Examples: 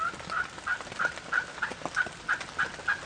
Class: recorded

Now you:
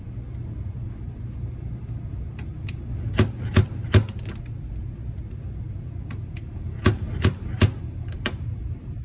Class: recorded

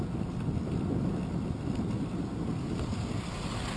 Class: recorded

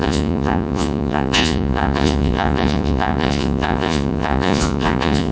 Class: remade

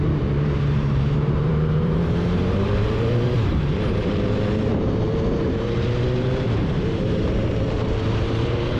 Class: remade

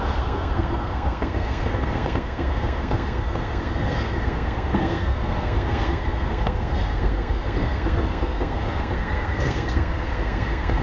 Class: remade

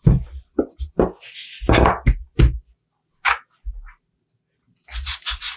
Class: recorded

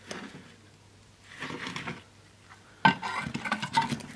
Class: recorded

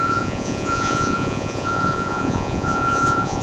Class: remade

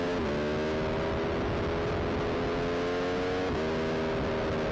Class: recorded